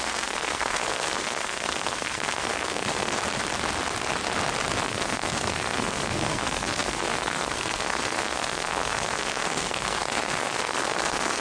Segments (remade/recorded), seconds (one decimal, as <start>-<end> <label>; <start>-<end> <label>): 0.0-3.2 remade; 3.2-4.8 recorded; 4.8-11.4 remade